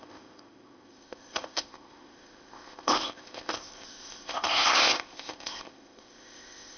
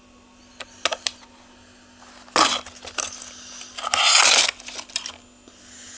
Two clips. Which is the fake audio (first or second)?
first